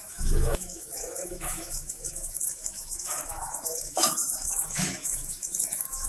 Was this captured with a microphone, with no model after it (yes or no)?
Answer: no